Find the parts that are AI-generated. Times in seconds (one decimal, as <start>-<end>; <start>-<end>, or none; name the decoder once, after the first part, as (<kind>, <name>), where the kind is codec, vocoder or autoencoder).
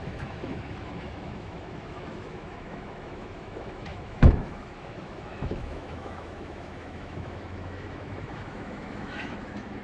0.0-9.8 (autoencoder, DAC-VAE)